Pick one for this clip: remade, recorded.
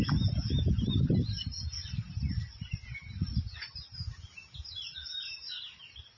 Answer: recorded